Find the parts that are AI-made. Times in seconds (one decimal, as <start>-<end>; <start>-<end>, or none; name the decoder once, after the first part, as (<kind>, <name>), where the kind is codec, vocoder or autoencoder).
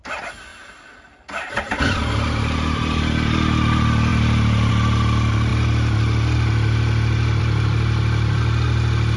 0.5-3.0 (vocoder, BigVGAN v2)